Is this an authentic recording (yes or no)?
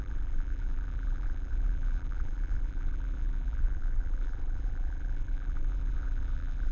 no